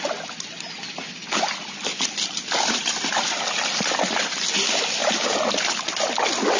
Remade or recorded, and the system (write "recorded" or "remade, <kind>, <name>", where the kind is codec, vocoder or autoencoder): recorded